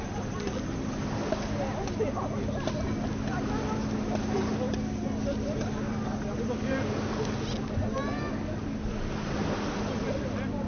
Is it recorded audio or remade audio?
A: recorded